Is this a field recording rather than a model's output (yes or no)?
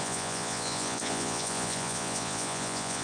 no